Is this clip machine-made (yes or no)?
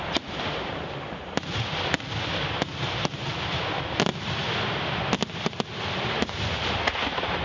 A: no